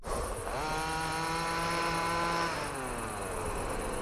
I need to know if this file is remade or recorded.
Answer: recorded